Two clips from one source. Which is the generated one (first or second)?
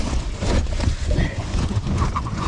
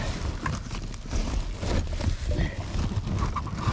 first